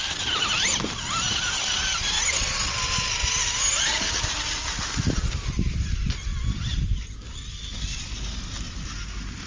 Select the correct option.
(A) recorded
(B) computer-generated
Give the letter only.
A